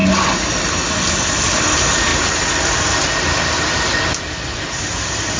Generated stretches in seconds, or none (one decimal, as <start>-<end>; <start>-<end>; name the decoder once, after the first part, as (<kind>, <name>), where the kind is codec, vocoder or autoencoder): 0.0-0.7 (vocoder, BigVGAN v2); 2.1-4.8